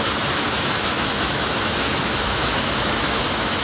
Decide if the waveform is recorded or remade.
remade